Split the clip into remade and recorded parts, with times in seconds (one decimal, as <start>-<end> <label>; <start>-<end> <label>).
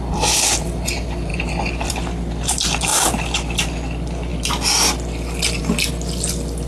0.0-6.7 recorded